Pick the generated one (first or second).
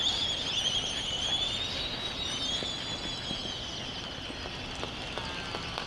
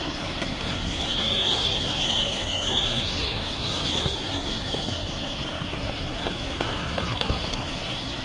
second